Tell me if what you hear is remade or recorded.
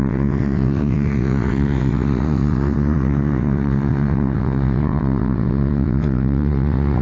remade